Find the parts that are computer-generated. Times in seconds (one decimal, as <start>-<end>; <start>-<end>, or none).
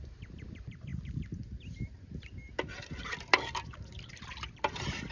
0.0-0.9; 4.0-5.1